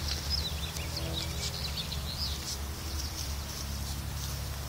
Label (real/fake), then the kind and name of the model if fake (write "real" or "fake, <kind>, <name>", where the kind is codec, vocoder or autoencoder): real